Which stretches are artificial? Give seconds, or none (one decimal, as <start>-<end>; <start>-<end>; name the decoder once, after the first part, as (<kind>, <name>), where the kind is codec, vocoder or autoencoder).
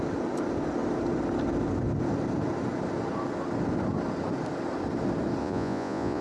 5.4-6.2 (vocoder, Vocos)